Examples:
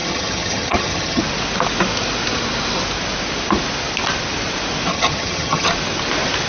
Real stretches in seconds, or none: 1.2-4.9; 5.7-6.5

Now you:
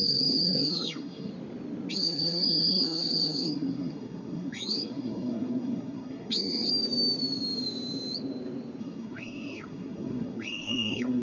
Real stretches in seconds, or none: 1.3-1.9; 6.7-8.8

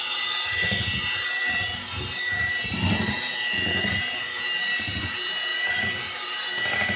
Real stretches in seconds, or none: 0.0-7.0

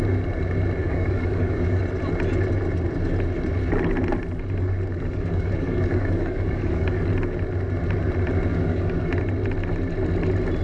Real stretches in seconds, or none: 0.0-0.8; 1.8-4.9; 7.1-8.5; 9.2-10.6

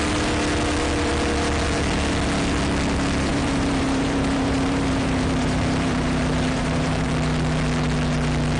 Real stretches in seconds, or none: 0.0-3.3; 7.1-8.6

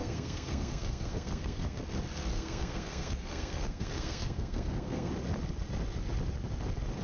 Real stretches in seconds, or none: 1.8-2.3; 5.1-7.0